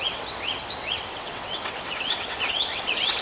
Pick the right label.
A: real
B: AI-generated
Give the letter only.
B